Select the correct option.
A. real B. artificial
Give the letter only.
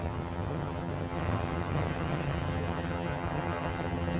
B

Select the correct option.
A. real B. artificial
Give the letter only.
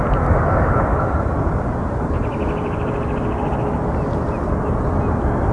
A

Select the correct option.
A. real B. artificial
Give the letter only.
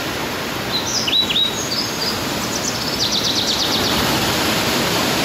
A